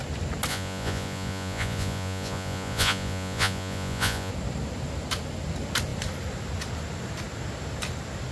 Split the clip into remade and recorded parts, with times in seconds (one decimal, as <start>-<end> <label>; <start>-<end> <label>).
0.0-0.5 recorded; 0.5-4.3 remade; 4.3-8.3 recorded

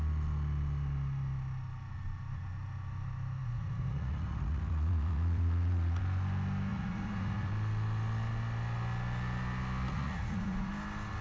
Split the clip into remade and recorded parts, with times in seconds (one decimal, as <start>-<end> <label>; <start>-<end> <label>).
0.0-3.4 recorded; 3.4-6.0 remade; 6.0-6.7 recorded; 6.7-7.5 remade; 7.5-9.9 recorded; 9.9-10.7 remade; 10.7-11.2 recorded

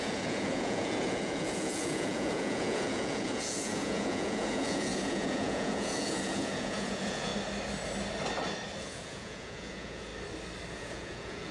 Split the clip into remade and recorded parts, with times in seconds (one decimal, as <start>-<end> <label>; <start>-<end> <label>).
0.0-7.3 remade; 7.3-8.8 recorded; 8.8-10.1 remade; 10.1-10.7 recorded; 10.7-11.5 remade

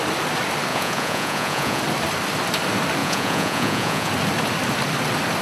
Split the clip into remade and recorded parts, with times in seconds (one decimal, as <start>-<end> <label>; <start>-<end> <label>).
0.0-0.7 recorded; 0.7-1.8 remade; 1.8-3.0 recorded; 3.0-4.1 remade; 4.1-5.4 recorded

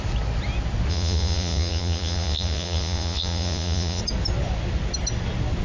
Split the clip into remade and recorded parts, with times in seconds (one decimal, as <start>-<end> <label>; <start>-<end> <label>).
0.0-0.9 recorded; 0.9-4.0 remade; 4.0-5.6 recorded

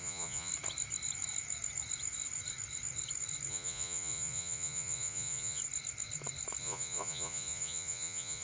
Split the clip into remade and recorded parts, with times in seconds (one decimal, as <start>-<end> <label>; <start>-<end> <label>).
0.0-0.5 remade; 0.5-3.5 recorded; 3.5-5.6 remade; 5.6-6.6 recorded; 6.6-8.4 remade

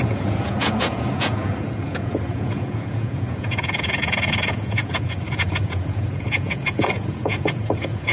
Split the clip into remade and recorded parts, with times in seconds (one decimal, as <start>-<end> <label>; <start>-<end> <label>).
0.0-8.1 remade

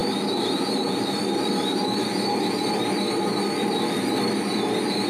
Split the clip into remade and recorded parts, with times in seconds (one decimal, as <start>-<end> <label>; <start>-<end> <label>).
0.0-5.1 recorded